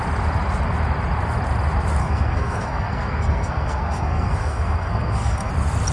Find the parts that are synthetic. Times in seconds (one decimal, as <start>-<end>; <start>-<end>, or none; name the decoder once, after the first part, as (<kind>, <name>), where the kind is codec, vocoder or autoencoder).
2.0-5.5 (codec, SNAC)